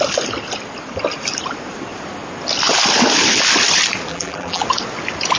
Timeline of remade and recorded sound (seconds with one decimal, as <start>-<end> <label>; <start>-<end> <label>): 0.0-4.1 recorded; 4.1-4.6 remade; 4.6-5.4 recorded